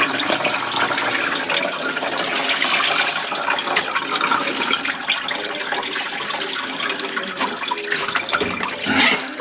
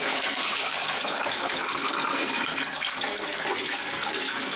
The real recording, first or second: first